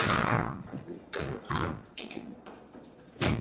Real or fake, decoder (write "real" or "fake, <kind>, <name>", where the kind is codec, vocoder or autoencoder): fake, vocoder, Vocos